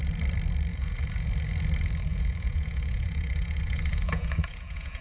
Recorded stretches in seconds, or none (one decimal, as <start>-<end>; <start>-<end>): 0.0-0.7; 1.3-2.1